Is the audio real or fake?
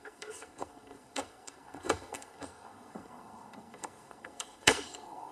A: fake